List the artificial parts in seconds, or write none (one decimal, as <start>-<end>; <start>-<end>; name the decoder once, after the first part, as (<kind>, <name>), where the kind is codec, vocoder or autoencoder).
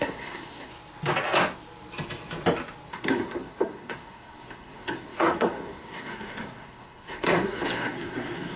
0.0-0.7 (codec, SNAC); 2.9-8.6